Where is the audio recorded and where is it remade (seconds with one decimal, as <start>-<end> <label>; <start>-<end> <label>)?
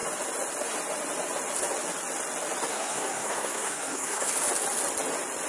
0.0-2.7 recorded; 2.7-4.3 remade; 4.3-5.5 recorded